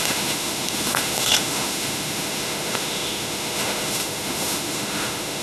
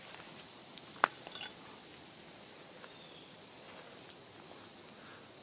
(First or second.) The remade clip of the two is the first